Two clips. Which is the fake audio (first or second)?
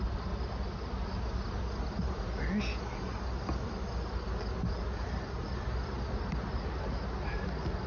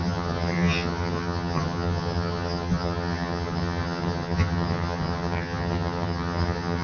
second